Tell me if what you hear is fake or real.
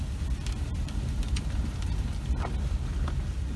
real